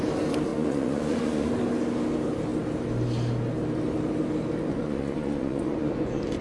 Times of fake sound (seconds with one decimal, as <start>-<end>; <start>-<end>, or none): 0.5-1.5; 4.7-6.4